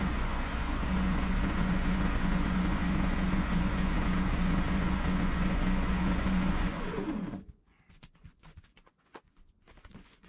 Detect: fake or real fake